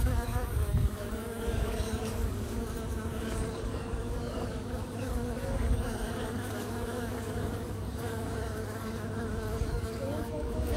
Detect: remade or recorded remade